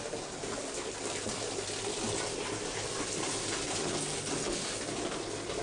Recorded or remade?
recorded